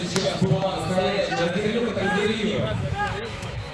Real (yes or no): no